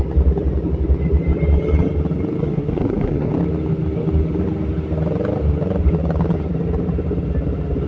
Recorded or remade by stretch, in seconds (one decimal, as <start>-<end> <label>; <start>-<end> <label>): 0.0-2.4 recorded; 2.4-3.3 remade; 3.3-7.9 recorded

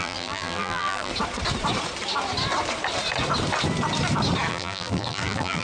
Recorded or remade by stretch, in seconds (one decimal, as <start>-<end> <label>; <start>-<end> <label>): 0.0-1.1 remade; 1.1-4.5 recorded; 4.5-5.6 remade